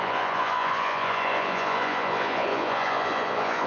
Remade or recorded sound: remade